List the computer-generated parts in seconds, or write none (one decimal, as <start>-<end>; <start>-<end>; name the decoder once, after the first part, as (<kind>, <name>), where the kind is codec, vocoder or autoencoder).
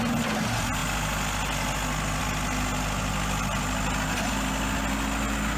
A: none